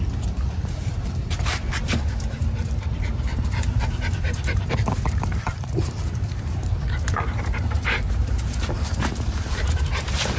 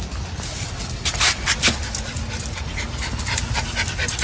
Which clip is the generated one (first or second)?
first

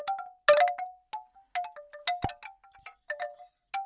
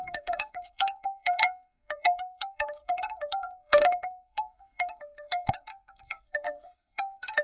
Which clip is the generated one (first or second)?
second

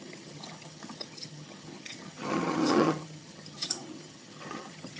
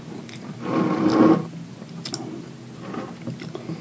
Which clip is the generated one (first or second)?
first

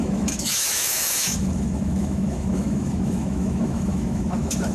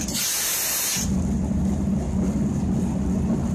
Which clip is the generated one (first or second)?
first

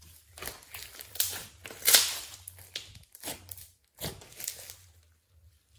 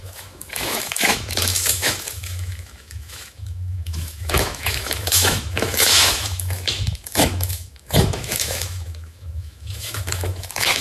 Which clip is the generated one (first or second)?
second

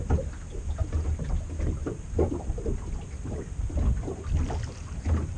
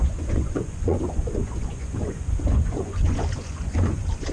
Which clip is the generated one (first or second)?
second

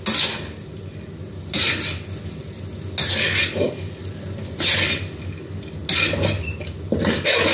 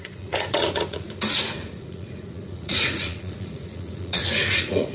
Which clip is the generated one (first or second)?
second